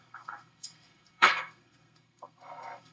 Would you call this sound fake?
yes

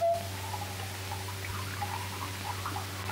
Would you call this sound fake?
no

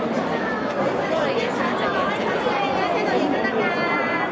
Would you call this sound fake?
no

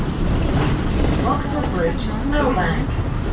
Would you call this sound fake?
no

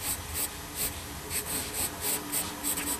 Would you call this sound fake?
no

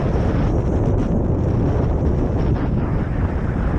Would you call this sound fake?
yes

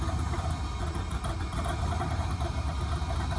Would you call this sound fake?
no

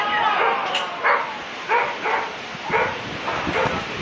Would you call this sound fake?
no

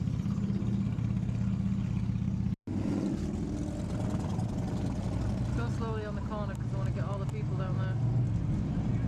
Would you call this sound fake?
no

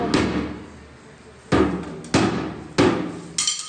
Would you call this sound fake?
no